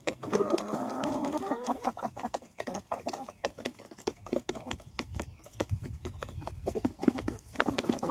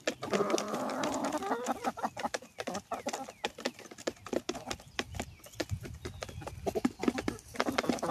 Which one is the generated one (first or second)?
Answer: first